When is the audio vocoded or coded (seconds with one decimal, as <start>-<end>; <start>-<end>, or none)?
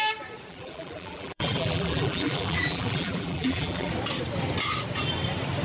0.5-3.9